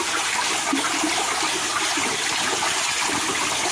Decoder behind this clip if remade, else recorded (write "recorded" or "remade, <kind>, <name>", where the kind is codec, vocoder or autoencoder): recorded